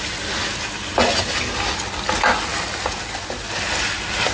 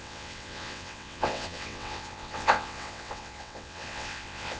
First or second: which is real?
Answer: first